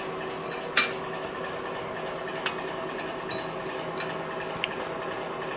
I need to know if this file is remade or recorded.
recorded